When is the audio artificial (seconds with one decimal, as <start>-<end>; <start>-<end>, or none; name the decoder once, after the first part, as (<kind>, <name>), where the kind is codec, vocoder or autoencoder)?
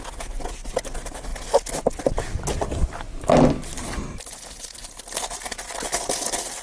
none